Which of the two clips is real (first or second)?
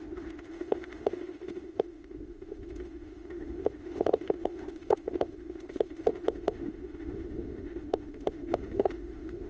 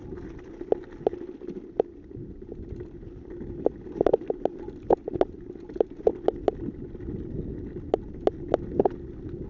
second